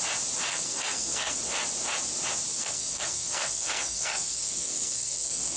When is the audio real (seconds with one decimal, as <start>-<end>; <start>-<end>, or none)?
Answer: 0.0-0.5; 1.4-2.5